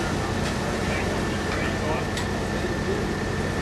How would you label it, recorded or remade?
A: recorded